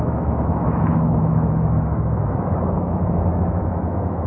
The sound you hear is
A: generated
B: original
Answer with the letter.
A